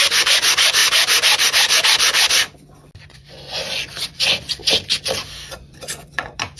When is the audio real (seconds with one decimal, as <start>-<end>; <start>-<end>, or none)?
0.8-3.1; 4.6-5.5